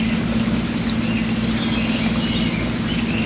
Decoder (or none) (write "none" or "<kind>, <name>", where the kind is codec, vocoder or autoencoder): none